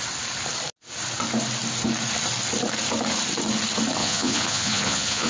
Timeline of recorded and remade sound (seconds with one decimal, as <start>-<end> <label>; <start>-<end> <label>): 0.0-4.0 recorded; 4.0-5.3 remade